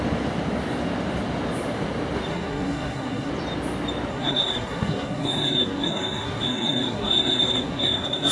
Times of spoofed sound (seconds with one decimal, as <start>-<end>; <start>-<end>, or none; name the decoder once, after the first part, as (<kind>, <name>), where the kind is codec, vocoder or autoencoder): 2.3-3.3 (codec, SNAC); 4.1-8.3